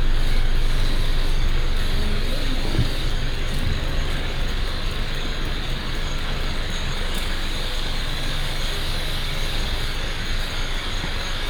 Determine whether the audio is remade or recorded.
remade